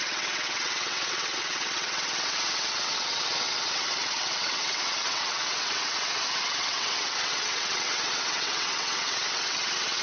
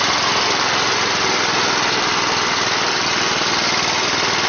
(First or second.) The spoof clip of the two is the first